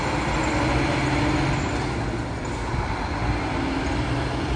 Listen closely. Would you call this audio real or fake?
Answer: real